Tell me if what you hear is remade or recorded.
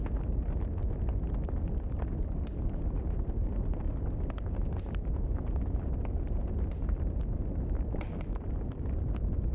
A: recorded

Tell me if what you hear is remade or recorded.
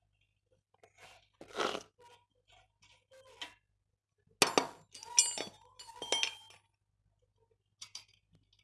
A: recorded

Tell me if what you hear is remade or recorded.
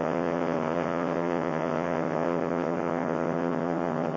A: remade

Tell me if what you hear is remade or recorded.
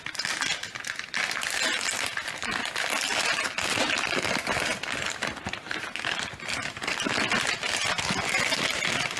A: recorded